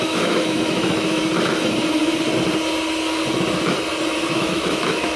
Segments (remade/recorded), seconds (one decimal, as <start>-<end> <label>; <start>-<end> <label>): 0.0-1.2 remade; 1.2-4.3 recorded; 4.3-5.2 remade

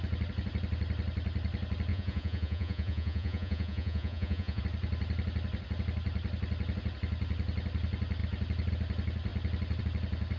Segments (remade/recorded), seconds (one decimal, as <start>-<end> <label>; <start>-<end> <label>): 0.0-1.9 recorded; 1.9-4.6 remade; 4.6-10.4 recorded